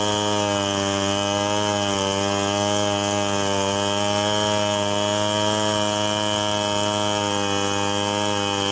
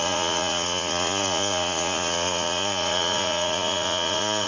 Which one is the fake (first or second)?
second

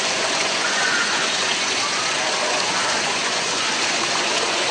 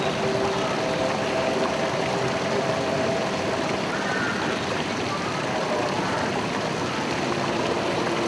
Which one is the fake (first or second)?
first